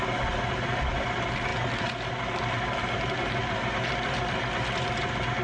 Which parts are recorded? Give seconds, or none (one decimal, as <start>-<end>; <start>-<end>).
0.0-5.4